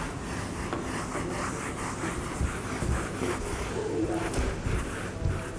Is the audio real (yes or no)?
yes